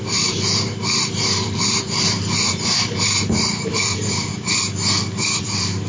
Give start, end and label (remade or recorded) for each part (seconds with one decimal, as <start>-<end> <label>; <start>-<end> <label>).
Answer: 0.0-4.3 remade; 4.3-5.4 recorded; 5.4-5.9 remade